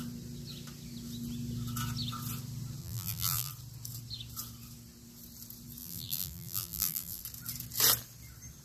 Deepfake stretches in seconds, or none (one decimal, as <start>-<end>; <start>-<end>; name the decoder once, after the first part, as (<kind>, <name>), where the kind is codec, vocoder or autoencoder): 2.8-3.5 (vocoder, BigVGAN v2); 5.8-7.2